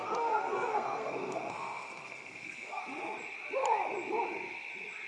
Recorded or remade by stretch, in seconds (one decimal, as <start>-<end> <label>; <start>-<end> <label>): 0.0-2.8 remade; 2.8-5.1 recorded

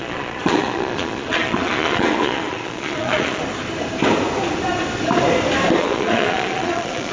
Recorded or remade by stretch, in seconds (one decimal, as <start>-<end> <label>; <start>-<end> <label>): 0.0-3.4 remade; 3.4-5.8 recorded; 5.8-7.1 remade

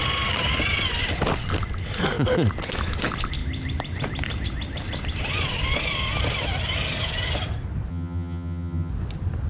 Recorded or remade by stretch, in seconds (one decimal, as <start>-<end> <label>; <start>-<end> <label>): 0.0-7.9 recorded; 7.9-8.9 remade; 8.9-9.5 recorded

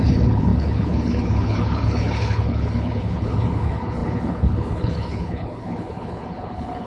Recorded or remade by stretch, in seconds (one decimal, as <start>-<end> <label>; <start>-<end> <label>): 0.0-6.9 remade

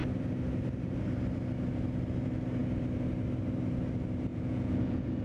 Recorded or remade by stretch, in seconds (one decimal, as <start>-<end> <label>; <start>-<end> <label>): 0.0-4.3 recorded; 4.3-5.2 remade

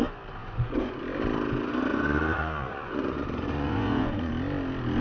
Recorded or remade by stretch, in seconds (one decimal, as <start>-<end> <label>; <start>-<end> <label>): 0.0-0.4 recorded; 0.4-1.0 remade; 1.0-1.9 recorded; 1.9-4.3 remade; 4.3-5.0 recorded